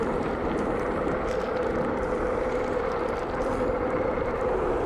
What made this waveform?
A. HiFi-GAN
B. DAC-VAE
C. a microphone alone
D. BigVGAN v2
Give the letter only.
C